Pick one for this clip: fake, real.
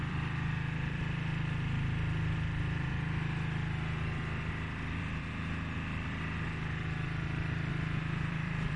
fake